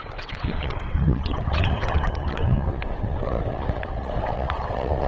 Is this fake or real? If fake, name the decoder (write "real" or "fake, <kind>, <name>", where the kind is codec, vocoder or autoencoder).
fake, vocoder, WaveNeXt